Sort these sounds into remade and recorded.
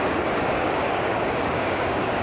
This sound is remade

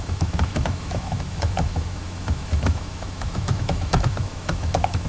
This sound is remade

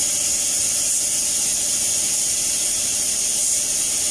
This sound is recorded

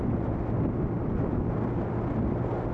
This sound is recorded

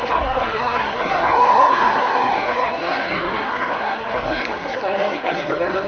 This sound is remade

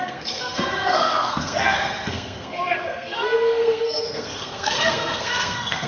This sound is remade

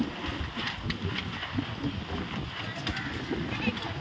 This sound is recorded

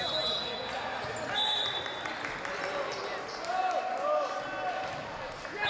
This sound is recorded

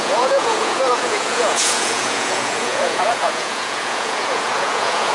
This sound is remade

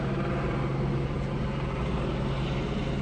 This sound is recorded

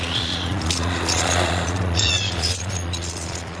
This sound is remade